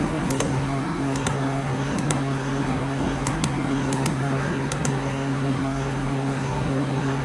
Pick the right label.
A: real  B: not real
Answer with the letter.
B